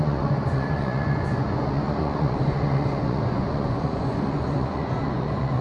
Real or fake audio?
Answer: fake